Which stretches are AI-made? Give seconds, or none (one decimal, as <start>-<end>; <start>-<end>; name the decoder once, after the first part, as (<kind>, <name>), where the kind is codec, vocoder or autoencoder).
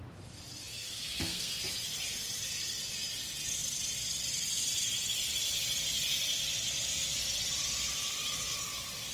0.7-1.6 (codec, SNAC)